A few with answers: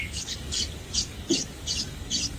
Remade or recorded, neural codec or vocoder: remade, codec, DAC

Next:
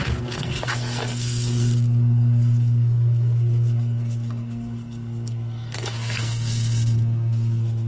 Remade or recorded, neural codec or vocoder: remade, codec, SNAC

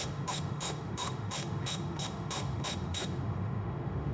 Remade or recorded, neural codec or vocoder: remade, autoencoder, DAC-VAE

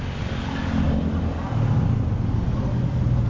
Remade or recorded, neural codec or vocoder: recorded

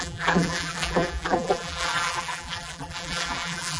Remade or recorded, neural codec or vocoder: remade, vocoder, BigVGAN v2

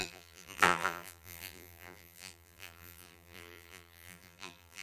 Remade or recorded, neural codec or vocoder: remade, vocoder, BigVGAN v2